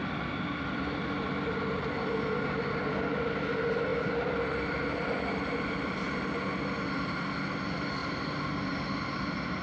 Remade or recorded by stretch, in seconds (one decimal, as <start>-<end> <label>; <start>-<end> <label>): 0.0-9.6 recorded